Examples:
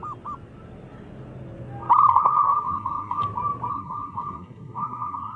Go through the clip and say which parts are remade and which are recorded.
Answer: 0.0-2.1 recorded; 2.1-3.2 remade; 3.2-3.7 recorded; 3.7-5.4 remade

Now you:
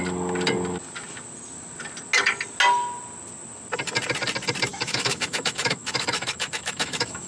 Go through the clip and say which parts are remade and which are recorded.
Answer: 0.0-4.7 recorded; 4.7-7.3 remade

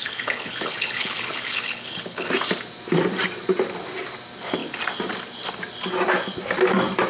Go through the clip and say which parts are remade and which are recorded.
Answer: 0.0-2.3 remade; 2.3-7.1 recorded

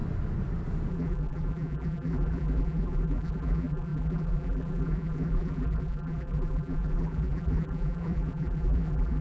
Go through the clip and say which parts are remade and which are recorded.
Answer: 0.0-0.9 recorded; 0.9-9.2 remade

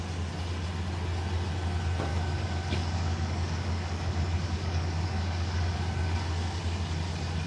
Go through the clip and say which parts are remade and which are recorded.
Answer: 0.0-2.1 recorded; 2.1-6.6 remade; 6.6-7.5 recorded